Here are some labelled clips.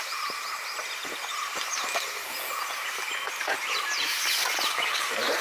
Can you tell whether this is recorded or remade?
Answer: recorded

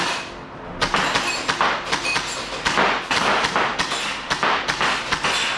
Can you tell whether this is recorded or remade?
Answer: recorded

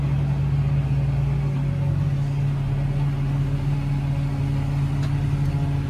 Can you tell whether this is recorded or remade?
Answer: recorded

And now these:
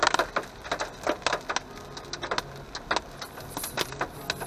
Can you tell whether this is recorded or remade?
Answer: recorded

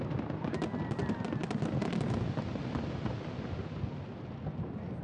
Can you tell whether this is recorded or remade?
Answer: recorded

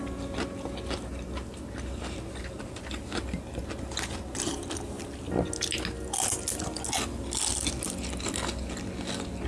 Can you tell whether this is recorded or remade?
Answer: recorded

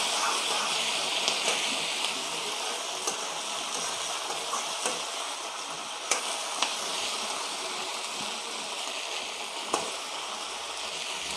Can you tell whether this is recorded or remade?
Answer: recorded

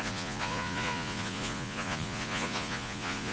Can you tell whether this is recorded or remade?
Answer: remade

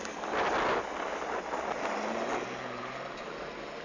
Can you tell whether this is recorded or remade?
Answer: recorded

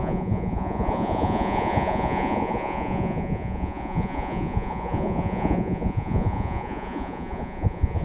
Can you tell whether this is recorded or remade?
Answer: remade